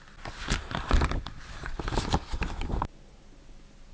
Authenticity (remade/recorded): recorded